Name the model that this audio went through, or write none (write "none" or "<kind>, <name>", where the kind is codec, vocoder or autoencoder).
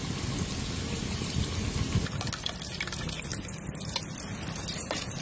none